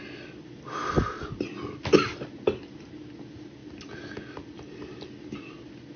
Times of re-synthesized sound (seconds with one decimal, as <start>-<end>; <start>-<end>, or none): none